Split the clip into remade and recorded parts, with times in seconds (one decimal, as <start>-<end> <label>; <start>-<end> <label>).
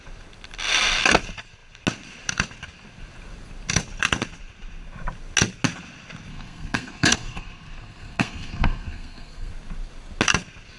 0.0-6.3 recorded; 6.3-9.5 remade; 9.5-10.8 recorded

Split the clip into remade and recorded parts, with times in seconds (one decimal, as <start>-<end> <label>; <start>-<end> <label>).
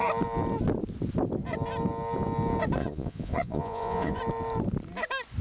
0.0-2.8 recorded; 2.8-4.2 remade; 4.2-5.4 recorded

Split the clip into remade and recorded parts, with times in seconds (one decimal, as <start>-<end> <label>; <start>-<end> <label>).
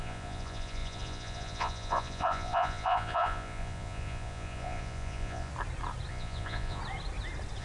0.0-5.5 remade; 5.5-6.1 recorded; 6.1-6.8 remade; 6.8-7.6 recorded